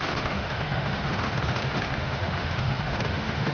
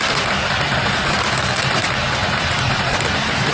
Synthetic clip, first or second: first